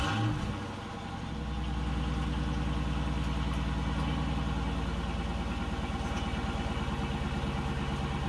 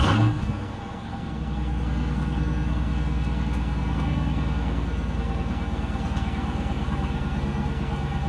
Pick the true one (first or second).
first